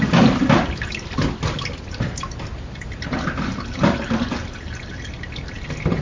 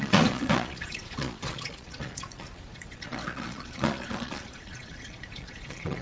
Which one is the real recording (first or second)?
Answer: first